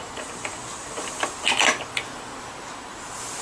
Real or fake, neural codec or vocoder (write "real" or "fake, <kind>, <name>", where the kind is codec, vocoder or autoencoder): real